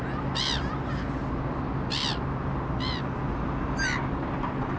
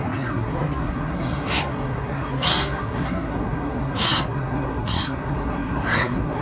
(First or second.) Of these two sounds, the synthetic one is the second